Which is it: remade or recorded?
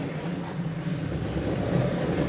recorded